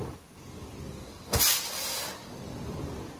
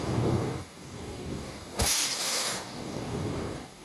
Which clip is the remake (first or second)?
second